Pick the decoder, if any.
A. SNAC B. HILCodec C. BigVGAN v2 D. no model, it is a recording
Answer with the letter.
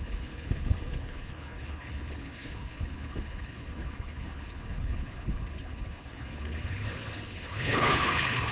B